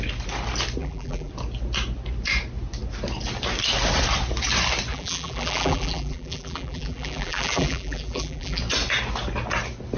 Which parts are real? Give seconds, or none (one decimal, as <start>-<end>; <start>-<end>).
0.0-0.8; 1.3-4.9; 8.6-10.0

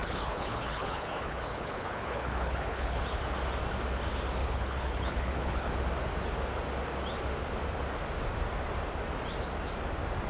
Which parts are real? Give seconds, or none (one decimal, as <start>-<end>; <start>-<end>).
3.2-4.4; 5.7-10.3

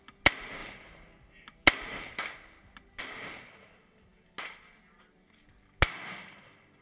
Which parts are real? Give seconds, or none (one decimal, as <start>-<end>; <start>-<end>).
0.0-6.8

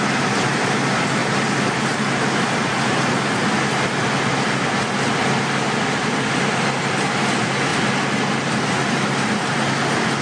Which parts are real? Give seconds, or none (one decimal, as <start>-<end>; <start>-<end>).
0.0-10.2

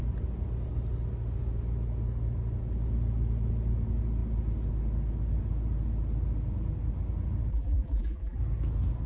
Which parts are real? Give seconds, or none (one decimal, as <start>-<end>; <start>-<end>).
0.0-7.5; 8.4-9.1

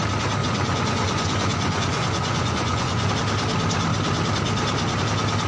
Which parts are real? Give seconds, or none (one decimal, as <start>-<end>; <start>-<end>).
0.0-0.4; 3.1-5.5

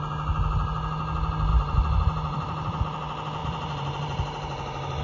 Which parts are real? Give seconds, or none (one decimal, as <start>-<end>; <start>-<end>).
0.0-1.5; 2.8-3.4

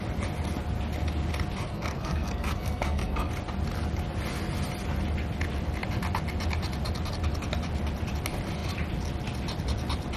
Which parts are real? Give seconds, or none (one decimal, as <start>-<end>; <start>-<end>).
0.0-1.7; 3.3-10.2